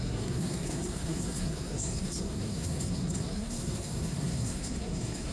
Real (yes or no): no